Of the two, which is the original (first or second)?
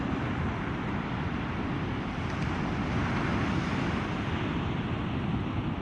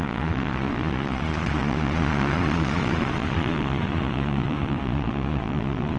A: first